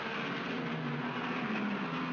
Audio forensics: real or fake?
real